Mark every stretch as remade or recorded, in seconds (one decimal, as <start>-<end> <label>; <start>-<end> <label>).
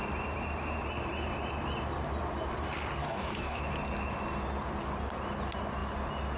0.0-3.0 recorded; 3.0-3.6 remade; 3.6-6.4 recorded